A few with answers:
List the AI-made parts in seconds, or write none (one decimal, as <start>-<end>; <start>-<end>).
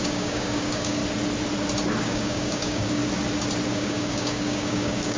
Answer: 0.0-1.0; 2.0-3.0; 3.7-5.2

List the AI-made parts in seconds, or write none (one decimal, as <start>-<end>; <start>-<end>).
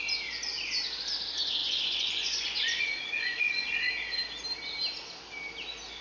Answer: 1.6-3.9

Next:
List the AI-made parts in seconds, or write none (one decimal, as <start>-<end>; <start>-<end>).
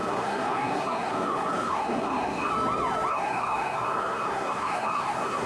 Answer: 0.0-2.5; 3.1-5.5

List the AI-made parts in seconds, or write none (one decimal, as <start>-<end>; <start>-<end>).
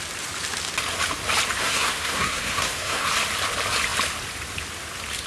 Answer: 1.6-3.1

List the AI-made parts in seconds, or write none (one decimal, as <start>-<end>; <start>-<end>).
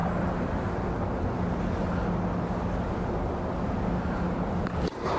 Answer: none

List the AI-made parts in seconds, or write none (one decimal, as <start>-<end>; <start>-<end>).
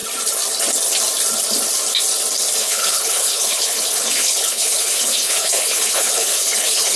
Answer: 2.6-7.0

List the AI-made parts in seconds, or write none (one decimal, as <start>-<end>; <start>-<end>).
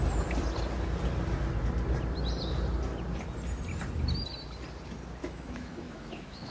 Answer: 5.2-6.5